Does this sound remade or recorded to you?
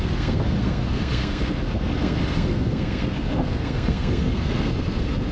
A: remade